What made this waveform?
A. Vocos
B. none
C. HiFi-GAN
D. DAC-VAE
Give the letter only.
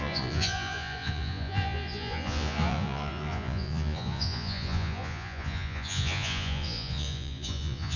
A